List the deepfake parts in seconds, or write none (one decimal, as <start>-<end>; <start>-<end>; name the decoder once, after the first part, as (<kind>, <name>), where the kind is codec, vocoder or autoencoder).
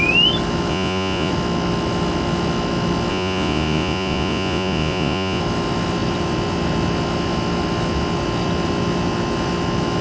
0.7-1.3 (vocoder, Vocos); 3.1-5.4